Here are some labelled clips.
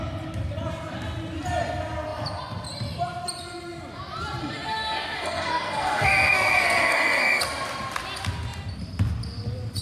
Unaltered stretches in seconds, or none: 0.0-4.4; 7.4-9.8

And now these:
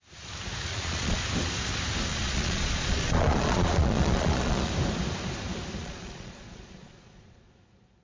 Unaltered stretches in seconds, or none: 0.0-0.7; 1.2-2.1; 4.7-5.8; 7.5-8.0

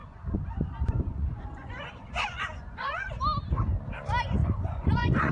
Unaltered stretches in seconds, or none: 3.2-4.4

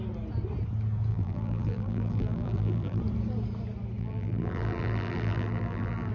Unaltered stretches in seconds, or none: 0.0-1.1; 3.0-4.0